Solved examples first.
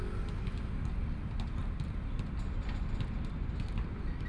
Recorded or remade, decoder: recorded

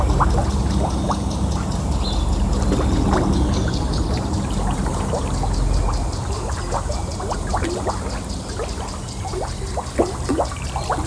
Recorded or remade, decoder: recorded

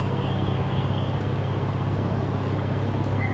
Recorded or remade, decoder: remade, codec, SNAC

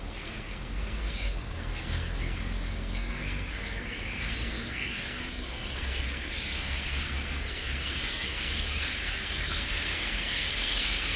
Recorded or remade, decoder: remade, codec, SNAC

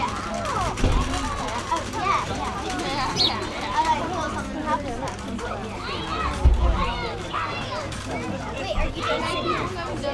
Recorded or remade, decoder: recorded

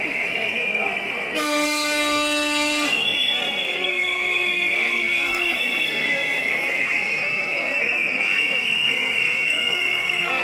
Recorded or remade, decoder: remade, codec, SNAC